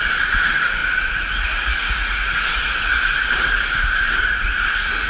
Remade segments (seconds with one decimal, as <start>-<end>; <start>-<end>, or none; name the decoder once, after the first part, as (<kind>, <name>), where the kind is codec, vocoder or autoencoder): 0.0-2.9 (vocoder, Vocos); 4.2-5.1